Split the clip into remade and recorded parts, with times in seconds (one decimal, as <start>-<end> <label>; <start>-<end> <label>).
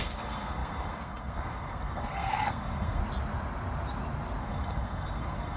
0.0-3.0 remade; 3.0-4.4 recorded; 4.4-5.6 remade